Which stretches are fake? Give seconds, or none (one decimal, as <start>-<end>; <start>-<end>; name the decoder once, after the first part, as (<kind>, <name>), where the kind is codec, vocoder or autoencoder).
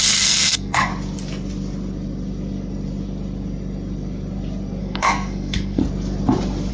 0.0-0.9 (codec, SNAC); 4.8-5.8